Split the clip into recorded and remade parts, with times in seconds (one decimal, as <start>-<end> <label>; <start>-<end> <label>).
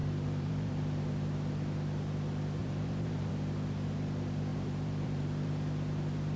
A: 0.0-0.7 remade; 0.7-2.6 recorded; 2.6-3.3 remade; 3.3-4.5 recorded; 4.5-5.5 remade; 5.5-6.4 recorded